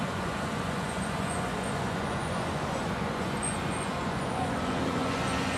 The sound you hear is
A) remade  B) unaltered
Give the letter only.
A